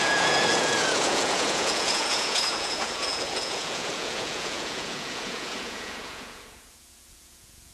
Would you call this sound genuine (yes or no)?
no